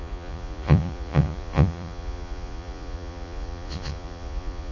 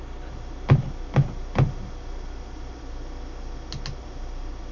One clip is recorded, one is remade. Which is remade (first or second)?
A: first